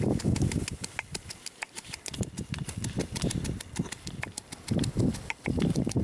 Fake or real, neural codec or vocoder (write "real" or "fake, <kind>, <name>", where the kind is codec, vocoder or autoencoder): real